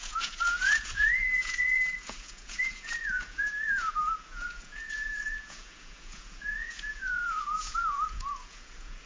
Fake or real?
fake